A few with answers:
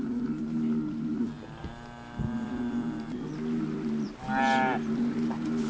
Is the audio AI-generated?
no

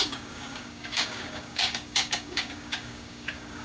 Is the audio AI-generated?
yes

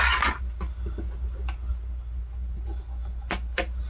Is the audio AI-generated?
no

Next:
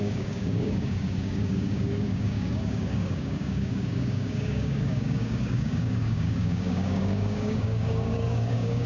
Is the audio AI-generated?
yes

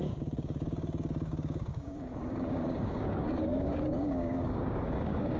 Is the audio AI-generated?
yes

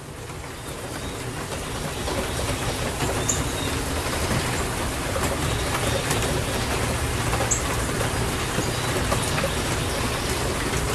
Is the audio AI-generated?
no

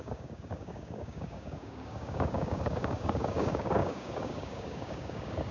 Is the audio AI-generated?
yes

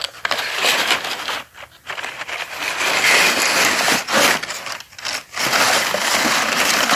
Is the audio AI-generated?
no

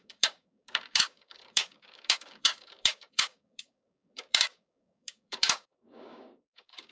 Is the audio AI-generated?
yes